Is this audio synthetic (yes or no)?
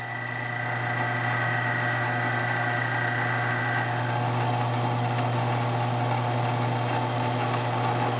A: no